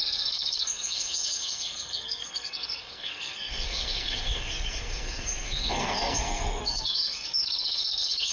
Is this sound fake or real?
fake